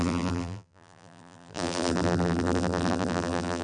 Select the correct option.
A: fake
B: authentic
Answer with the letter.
A